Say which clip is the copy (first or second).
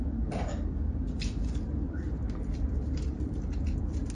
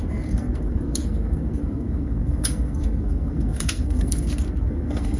second